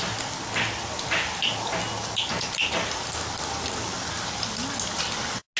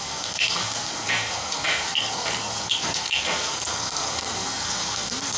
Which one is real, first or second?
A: first